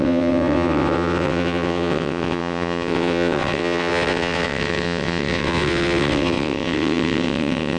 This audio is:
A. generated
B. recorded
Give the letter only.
A